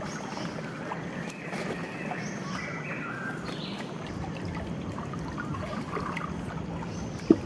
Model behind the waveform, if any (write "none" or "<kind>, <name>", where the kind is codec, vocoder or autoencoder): none